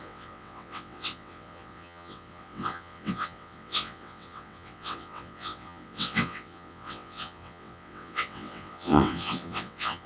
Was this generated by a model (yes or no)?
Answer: yes